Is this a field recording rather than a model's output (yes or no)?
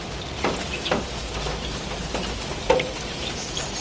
yes